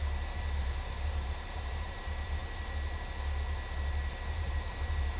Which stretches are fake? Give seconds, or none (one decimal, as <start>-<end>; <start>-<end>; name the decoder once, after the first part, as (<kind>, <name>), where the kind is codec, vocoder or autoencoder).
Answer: 0.6-2.4 (vocoder, BigVGAN v2); 4.1-5.2